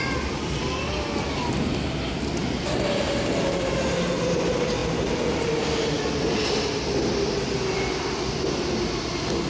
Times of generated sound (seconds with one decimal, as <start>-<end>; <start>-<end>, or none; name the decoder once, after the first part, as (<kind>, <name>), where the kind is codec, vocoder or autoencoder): none